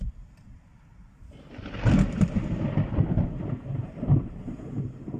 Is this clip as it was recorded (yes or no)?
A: no